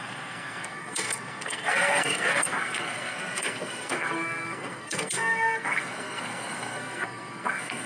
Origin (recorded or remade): remade